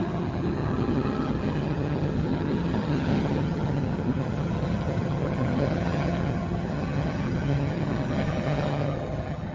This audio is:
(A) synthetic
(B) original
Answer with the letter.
A